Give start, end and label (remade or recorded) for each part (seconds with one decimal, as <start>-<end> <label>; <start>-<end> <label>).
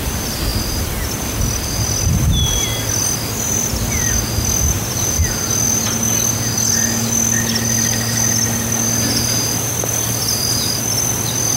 0.0-0.5 remade; 0.5-3.0 recorded; 3.0-5.2 remade; 5.2-10.2 recorded; 10.2-11.6 remade